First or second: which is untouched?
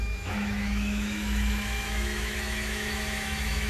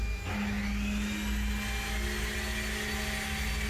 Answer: second